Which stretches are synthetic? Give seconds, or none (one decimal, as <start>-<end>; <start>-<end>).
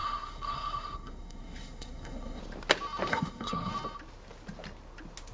0.0-2.4; 3.1-3.7